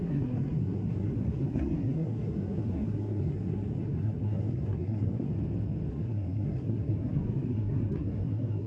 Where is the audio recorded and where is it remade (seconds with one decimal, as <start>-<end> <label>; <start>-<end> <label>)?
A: 0.0-5.3 remade; 5.3-5.9 recorded; 5.9-8.7 remade